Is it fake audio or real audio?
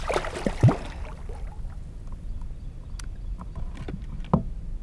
real